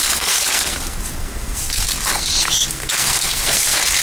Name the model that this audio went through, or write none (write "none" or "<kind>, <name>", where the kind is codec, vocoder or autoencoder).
codec, SNAC